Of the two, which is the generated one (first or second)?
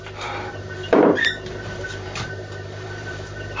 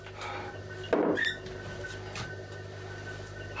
first